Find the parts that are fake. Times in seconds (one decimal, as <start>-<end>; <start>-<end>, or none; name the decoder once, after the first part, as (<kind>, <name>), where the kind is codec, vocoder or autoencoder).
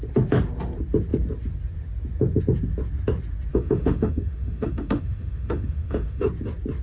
3.5-6.3 (autoencoder, DAC-VAE)